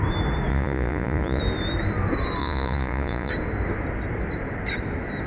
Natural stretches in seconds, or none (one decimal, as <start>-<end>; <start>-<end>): 0.0-0.5; 1.4-2.4; 3.3-5.3